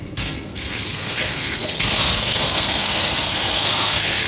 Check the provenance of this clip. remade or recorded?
remade